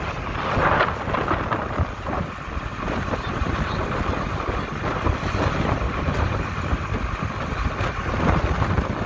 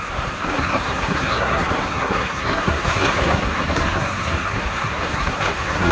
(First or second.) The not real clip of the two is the second